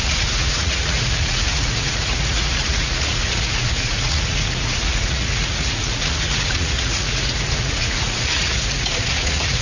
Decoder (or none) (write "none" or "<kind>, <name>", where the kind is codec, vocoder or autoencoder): vocoder, Vocos